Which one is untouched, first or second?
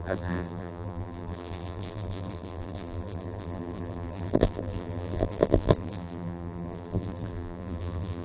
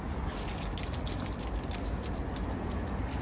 second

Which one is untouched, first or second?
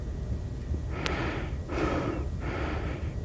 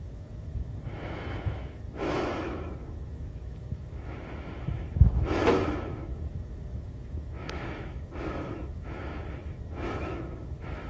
first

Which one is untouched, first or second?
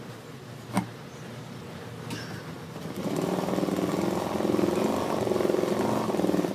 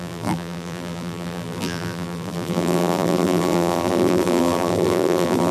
first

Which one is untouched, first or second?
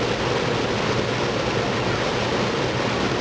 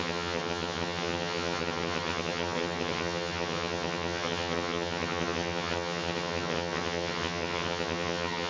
first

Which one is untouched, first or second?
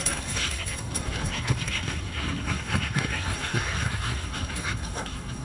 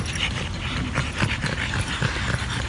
second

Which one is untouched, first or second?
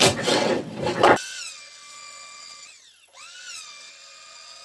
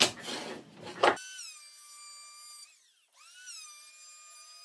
second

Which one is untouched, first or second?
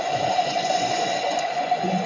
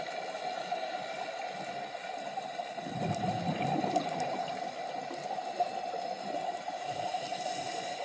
second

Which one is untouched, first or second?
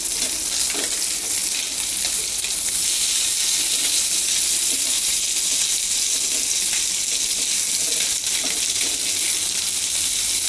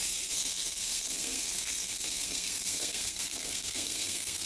first